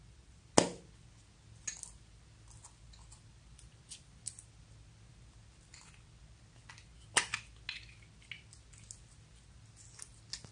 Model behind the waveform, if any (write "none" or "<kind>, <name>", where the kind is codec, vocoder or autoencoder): none